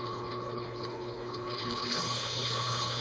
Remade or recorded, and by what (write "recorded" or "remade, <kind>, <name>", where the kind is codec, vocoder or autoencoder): remade, codec, HILCodec